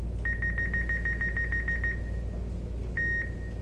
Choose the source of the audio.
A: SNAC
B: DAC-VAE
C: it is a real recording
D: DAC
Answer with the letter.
C